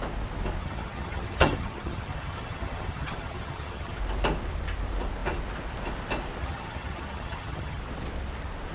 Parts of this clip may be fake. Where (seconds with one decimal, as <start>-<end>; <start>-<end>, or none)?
0.6-4.0; 6.4-7.8